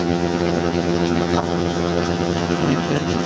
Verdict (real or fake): fake